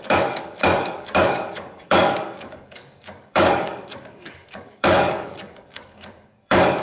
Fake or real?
fake